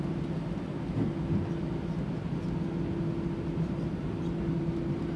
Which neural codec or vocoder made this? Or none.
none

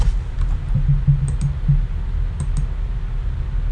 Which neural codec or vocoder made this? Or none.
none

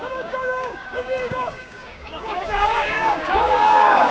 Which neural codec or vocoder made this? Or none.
codec, DAC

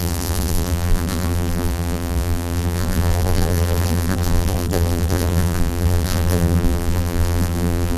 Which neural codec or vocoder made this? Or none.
vocoder, BigVGAN v2